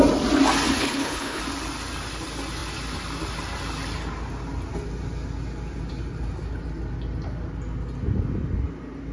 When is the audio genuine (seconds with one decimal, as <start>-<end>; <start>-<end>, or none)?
0.0-0.8; 1.4-9.1